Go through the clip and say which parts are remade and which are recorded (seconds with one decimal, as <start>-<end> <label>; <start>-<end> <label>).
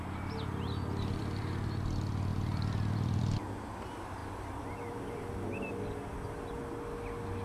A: 0.0-1.2 recorded; 1.2-1.9 remade; 1.9-2.3 recorded; 2.3-3.2 remade; 3.2-4.2 recorded; 4.2-5.7 remade; 5.7-7.4 recorded